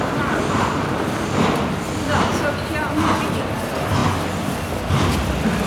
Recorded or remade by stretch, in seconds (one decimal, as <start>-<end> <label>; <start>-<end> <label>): 0.0-5.7 recorded